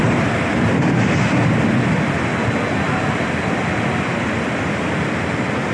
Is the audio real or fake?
fake